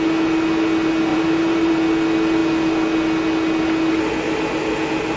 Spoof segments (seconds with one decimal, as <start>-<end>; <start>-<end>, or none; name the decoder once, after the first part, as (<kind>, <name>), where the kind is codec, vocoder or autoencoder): 1.1-1.7 (vocoder, BigVGAN v2)